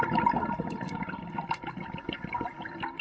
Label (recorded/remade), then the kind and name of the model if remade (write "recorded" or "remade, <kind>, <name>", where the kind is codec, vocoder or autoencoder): recorded